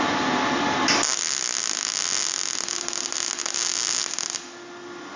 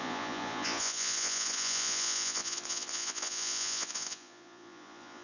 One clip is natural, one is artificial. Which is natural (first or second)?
first